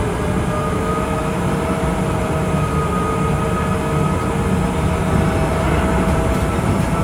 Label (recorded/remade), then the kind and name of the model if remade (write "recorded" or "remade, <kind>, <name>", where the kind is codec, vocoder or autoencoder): recorded